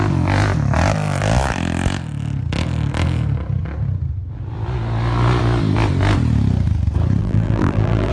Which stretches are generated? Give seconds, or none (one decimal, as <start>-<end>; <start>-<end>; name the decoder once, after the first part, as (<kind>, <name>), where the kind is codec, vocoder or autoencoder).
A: 7.2-8.1 (vocoder, BigVGAN v2)